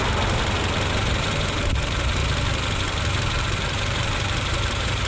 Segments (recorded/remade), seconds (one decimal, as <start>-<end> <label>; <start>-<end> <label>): 0.0-0.9 recorded; 0.9-2.2 remade; 2.2-3.4 recorded; 3.4-5.1 remade